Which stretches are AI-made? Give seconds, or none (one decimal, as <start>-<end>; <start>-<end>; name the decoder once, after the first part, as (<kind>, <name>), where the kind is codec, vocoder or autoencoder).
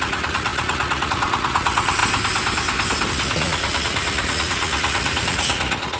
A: 0.0-2.0 (vocoder, Vocos); 3.1-6.0